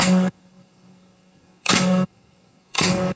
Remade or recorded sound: remade